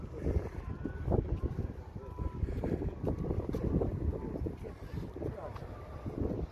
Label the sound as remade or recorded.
recorded